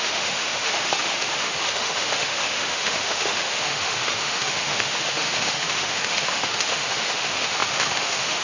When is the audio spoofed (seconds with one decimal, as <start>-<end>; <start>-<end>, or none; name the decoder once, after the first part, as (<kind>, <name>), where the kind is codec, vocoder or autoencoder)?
0.0-8.4 (autoencoder, DAC-VAE)